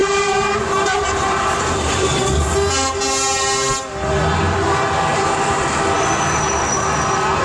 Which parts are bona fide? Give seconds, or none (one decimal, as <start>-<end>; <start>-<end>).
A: 2.5-5.1; 5.8-7.4